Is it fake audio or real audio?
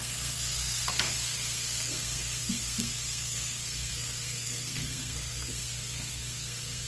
fake